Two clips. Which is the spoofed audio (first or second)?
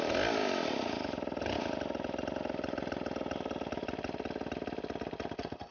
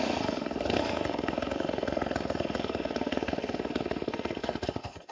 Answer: second